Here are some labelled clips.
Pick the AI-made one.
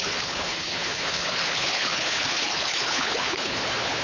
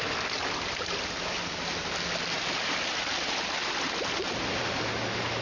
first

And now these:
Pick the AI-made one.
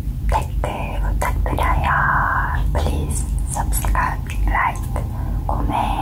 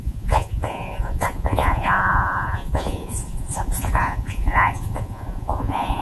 second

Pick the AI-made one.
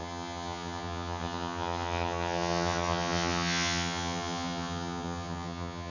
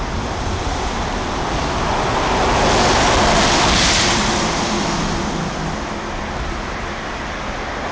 first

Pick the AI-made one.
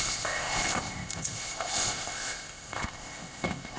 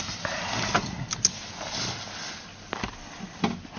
first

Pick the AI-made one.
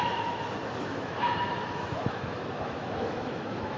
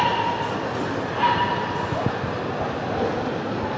first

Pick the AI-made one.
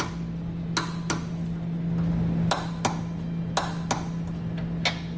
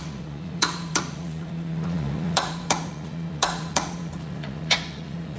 second